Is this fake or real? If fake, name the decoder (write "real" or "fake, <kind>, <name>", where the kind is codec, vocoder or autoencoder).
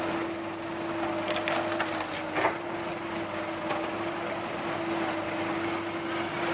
real